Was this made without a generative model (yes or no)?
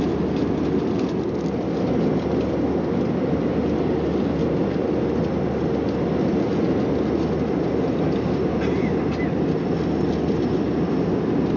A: yes